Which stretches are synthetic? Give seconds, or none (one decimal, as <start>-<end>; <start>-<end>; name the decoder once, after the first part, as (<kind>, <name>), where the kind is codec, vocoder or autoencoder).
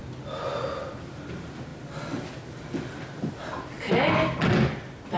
none